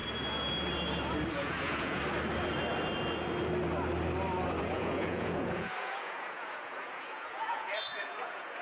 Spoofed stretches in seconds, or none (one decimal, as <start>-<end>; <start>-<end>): 1.3-2.0; 4.6-8.6